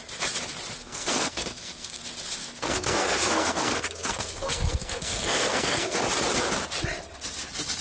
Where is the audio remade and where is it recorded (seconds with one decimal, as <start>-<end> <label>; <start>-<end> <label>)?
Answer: 0.0-0.8 recorded; 0.8-2.0 remade; 2.0-2.4 recorded; 2.4-6.0 remade; 6.0-7.8 recorded